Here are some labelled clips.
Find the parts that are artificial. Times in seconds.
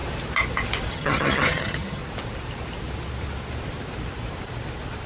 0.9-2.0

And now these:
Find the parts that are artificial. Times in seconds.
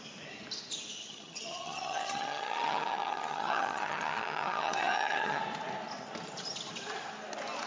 1.0-5.4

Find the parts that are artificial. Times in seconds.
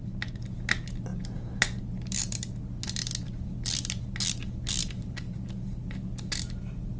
none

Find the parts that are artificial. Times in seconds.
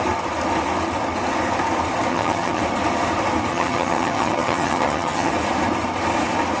2.1-2.6; 3.5-5.3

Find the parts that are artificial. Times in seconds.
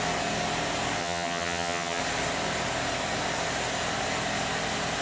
1.0-2.0